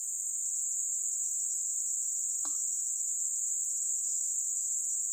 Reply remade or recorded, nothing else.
recorded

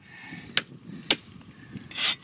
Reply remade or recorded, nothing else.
recorded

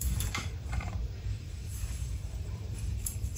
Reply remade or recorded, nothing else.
remade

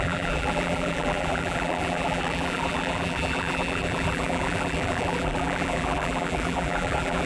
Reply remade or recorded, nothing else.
remade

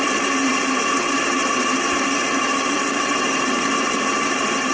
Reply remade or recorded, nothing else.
remade